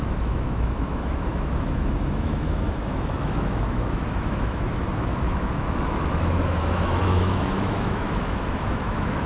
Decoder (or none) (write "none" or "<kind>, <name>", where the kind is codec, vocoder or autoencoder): autoencoder, DAC-VAE